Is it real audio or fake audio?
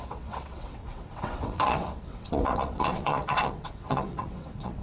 fake